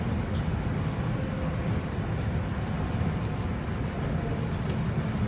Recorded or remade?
recorded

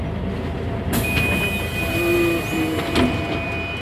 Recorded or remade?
recorded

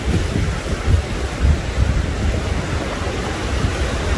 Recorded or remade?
recorded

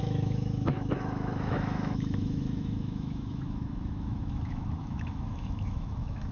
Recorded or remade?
remade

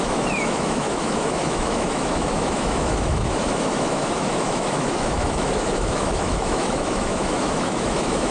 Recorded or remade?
remade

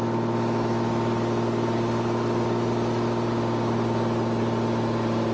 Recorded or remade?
recorded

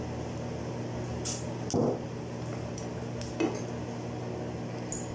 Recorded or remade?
recorded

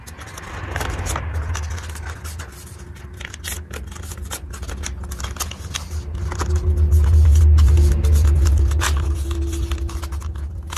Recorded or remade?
recorded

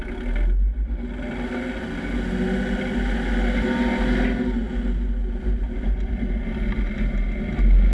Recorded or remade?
recorded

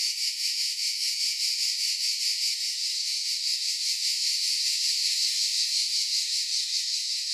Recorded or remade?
remade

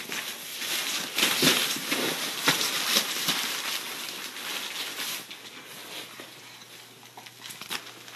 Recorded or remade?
recorded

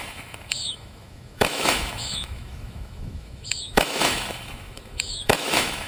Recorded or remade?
remade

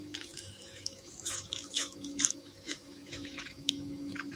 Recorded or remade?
remade